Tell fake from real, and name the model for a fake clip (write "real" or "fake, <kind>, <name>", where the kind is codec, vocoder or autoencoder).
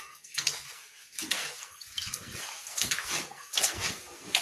fake, codec, SNAC